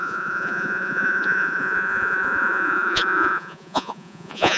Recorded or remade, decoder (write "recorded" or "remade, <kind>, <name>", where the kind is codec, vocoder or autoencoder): remade, vocoder, Vocos